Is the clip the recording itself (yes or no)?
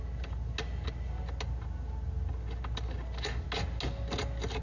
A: yes